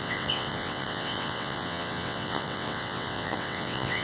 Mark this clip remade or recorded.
remade